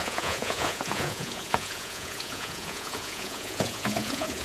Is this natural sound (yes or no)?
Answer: no